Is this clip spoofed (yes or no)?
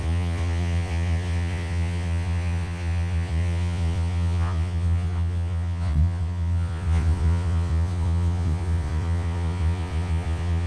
yes